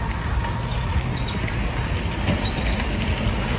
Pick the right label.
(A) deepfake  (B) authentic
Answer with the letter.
B